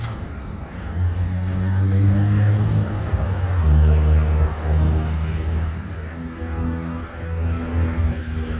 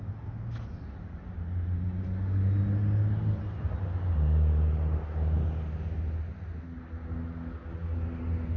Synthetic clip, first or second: first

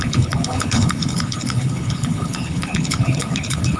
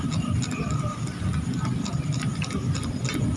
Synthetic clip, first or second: first